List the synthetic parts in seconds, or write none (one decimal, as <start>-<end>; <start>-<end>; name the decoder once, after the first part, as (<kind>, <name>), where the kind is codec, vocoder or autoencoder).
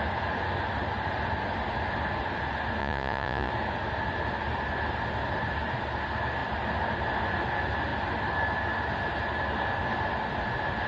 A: 2.8-3.5 (vocoder, Vocos)